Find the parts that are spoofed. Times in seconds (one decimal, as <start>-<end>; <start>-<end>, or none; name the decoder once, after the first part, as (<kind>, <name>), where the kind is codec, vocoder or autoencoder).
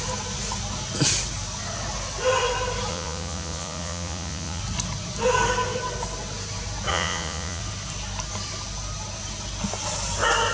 2.9-4.6 (vocoder, Vocos); 6.9-7.6